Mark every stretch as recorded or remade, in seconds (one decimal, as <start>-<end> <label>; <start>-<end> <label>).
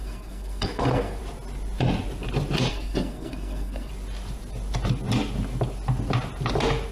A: 0.0-1.2 remade; 1.2-2.7 recorded; 2.7-3.9 remade; 3.9-6.9 recorded